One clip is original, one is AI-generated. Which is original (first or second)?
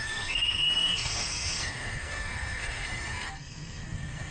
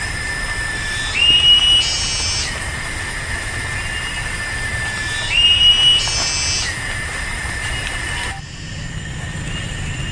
second